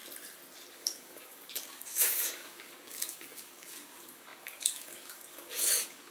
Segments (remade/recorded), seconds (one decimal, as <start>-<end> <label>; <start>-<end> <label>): 0.0-0.7 recorded; 0.7-6.1 remade

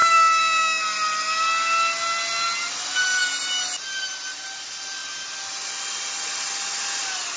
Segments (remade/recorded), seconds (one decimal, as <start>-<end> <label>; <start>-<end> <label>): 0.0-0.8 remade; 0.8-7.4 recorded